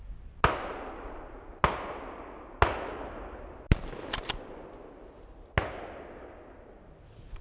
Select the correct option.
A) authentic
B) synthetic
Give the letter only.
A